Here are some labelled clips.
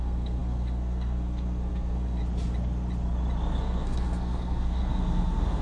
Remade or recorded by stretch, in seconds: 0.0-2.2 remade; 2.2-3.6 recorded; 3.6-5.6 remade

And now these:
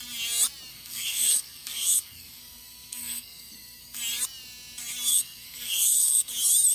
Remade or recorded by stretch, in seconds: 0.0-0.7 recorded; 0.7-4.0 remade; 4.0-5.1 recorded; 5.1-6.3 remade; 6.3-6.7 recorded

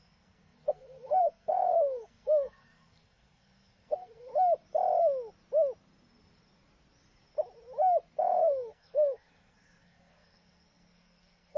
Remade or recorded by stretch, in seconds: 0.0-4.3 remade; 4.3-8.2 recorded; 8.2-11.6 remade

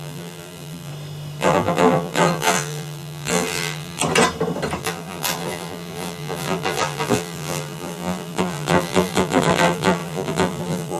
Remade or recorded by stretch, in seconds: 0.0-0.9 remade; 0.9-1.4 recorded; 1.4-4.0 remade; 4.0-4.8 recorded; 4.8-11.0 remade

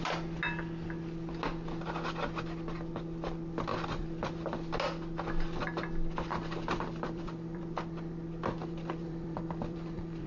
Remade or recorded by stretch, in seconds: 0.0-3.7 recorded; 3.7-4.3 remade; 4.3-6.3 recorded; 6.3-7.6 remade; 7.6-8.6 recorded; 8.6-10.3 remade

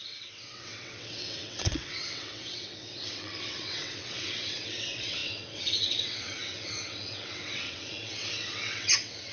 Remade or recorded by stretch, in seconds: 0.0-9.3 remade